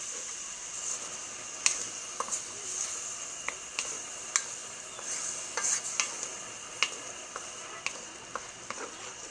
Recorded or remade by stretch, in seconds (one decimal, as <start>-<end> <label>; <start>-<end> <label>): 0.0-9.3 recorded